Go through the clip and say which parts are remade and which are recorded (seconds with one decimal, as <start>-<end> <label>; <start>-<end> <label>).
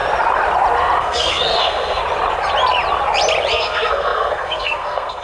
0.0-1.0 recorded; 1.0-2.0 remade; 2.0-3.5 recorded; 3.5-5.2 remade